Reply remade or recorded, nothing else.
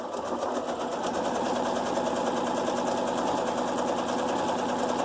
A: recorded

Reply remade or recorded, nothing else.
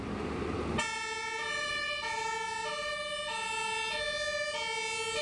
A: recorded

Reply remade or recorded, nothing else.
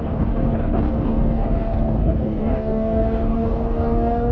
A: remade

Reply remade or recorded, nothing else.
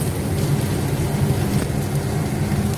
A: recorded